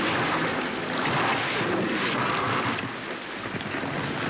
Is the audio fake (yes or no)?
no